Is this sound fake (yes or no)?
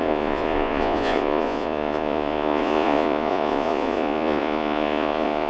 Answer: yes